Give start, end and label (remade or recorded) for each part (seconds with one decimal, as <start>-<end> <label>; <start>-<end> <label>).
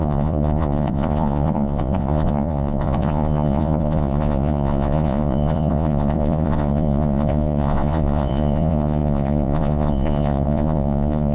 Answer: 0.0-11.3 remade